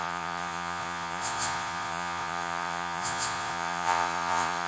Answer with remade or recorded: remade